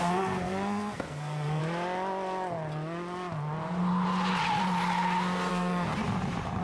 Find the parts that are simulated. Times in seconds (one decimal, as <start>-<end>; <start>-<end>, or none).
0.0-1.6; 5.5-5.9